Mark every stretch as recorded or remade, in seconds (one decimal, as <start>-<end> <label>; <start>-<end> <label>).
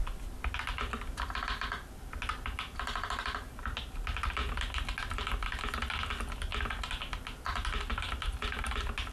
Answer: 0.0-9.1 recorded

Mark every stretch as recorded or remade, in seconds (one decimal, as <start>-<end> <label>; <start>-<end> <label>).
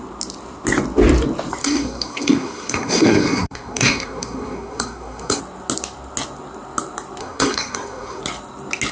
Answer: 0.0-1.6 recorded; 1.6-5.4 remade; 5.4-7.2 recorded; 7.2-8.2 remade; 8.2-8.9 recorded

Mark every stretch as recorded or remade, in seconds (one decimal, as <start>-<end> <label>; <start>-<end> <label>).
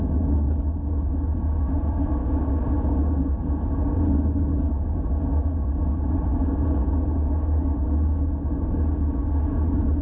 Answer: 0.0-10.0 recorded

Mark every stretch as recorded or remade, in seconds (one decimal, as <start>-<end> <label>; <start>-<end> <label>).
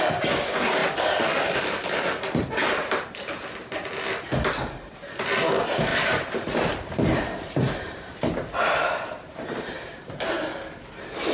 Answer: 0.0-5.9 recorded; 5.9-10.3 remade; 10.3-11.3 recorded